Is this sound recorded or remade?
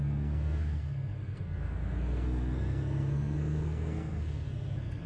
remade